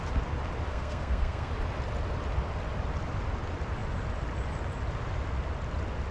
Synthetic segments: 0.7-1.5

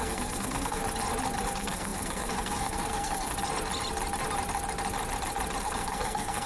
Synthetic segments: 0.0-0.8; 1.4-3.3; 5.6-6.5

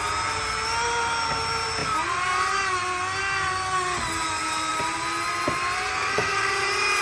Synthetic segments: 5.9-6.5